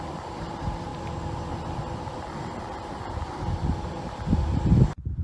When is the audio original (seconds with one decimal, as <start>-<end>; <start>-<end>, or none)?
0.9-4.0